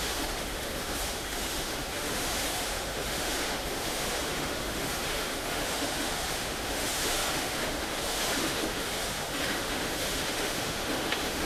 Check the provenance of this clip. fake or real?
fake